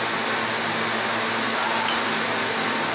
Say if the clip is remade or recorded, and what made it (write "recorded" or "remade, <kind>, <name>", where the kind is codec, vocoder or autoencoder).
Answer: recorded